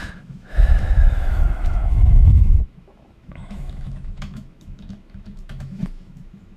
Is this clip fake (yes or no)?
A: yes